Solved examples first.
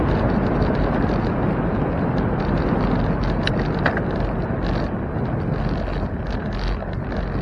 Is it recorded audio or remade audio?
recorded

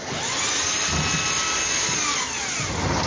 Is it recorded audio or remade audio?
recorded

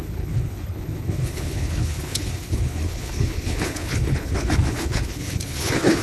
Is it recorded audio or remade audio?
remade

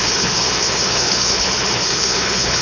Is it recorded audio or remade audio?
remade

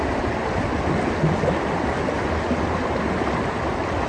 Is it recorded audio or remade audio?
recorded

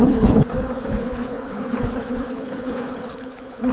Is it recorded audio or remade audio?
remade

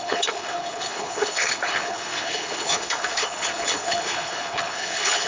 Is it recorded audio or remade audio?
remade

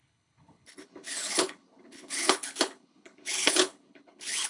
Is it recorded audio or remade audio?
remade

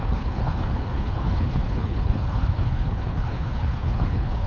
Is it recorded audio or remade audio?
remade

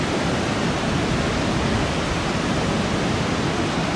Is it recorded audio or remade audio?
recorded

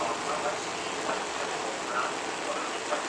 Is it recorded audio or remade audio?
recorded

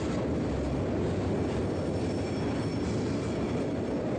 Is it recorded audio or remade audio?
recorded